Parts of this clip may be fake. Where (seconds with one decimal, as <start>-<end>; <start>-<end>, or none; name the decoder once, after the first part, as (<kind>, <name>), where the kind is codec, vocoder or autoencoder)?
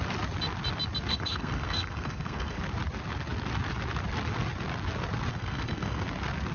1.1-2.6 (codec, SNAC); 5.3-6.0